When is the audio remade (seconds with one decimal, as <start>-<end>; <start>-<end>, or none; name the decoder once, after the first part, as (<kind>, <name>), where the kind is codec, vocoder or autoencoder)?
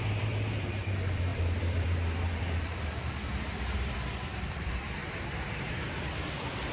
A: 0.0-6.7 (vocoder, BigVGAN v2)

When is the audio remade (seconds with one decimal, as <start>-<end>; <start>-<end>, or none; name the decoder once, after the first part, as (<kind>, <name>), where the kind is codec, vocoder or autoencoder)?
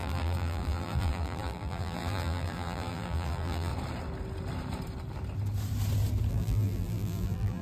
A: 0.0-3.7 (vocoder, BigVGAN v2); 6.3-7.6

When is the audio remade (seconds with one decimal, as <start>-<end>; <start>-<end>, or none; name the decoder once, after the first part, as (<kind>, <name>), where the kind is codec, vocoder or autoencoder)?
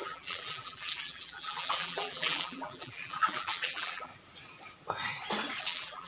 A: 0.0-4.1 (vocoder, BigVGAN v2); 5.6-6.1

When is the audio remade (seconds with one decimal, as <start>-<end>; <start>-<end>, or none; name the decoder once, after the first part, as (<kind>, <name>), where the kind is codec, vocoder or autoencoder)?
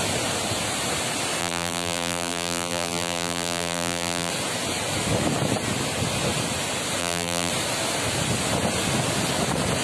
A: 1.4-4.3 (vocoder, BigVGAN v2); 7.0-7.5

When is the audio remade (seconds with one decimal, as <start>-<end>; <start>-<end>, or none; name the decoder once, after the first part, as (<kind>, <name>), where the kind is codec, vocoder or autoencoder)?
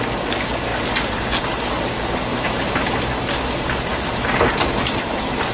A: 2.3-3.0 (vocoder, BigVGAN v2); 3.9-4.5